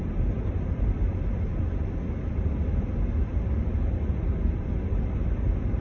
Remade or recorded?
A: remade